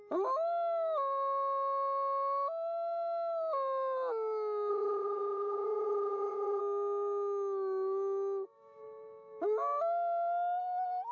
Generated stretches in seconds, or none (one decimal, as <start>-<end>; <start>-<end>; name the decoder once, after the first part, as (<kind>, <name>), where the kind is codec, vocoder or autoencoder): 4.7-6.6 (vocoder, HiFi-GAN)